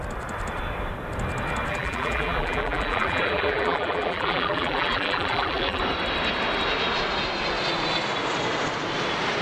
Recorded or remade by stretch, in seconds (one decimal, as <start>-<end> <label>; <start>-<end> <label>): 0.0-1.7 recorded; 1.7-5.8 remade; 5.8-9.4 recorded